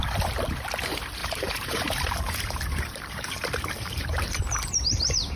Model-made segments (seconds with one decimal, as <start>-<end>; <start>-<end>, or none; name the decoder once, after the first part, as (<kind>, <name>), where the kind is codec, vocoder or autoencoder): 1.2-4.4 (vocoder, BigVGAN v2)